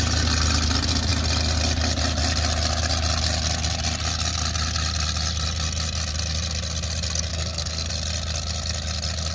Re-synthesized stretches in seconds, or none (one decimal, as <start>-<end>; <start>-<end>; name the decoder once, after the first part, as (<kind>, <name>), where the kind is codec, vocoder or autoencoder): 7.3-7.9 (codec, SNAC)